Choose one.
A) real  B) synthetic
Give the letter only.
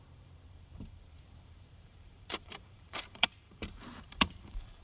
B